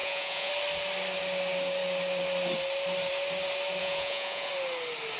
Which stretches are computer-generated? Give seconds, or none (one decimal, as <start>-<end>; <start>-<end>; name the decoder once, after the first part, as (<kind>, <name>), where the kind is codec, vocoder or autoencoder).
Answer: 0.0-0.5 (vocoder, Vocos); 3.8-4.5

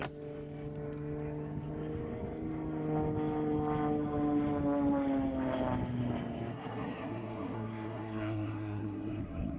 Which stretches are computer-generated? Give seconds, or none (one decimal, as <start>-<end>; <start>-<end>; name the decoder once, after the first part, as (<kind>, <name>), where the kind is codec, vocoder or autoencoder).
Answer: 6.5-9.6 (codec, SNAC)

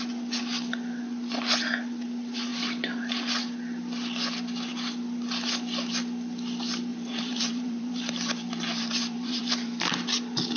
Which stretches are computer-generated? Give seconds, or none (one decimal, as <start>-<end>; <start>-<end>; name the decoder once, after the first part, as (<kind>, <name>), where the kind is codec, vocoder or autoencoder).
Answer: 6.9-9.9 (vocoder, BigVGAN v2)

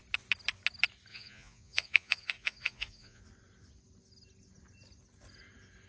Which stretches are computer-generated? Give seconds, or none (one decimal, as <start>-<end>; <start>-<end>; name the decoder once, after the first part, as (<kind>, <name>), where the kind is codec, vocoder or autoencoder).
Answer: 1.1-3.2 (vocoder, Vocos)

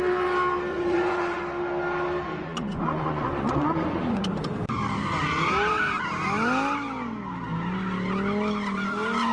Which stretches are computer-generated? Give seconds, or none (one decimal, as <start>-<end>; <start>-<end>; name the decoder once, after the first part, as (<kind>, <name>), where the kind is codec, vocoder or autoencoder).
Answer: 0.7-1.4 (vocoder, Vocos); 2.4-4.4

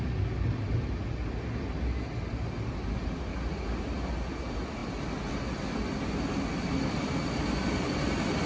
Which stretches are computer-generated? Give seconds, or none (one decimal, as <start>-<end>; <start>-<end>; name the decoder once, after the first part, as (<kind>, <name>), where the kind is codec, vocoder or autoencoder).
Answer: none

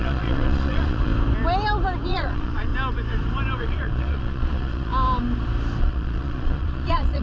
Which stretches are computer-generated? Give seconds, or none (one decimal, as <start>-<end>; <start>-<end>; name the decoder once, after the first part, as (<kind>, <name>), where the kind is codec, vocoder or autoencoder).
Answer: 0.0-1.1 (vocoder, Vocos); 2.1-2.7; 3.6-4.9; 5.8-7.2